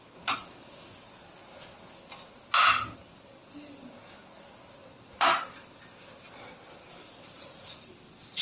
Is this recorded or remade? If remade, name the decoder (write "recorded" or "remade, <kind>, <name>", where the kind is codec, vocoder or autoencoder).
recorded